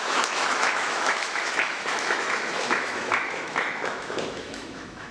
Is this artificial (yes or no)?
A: yes